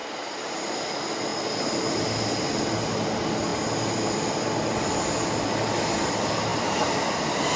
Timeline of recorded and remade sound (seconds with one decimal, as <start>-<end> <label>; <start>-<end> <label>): 0.0-0.8 remade; 0.8-7.6 recorded